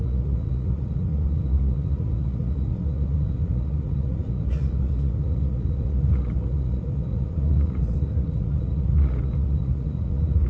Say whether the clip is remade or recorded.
remade